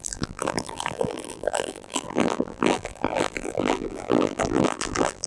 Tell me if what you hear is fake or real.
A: fake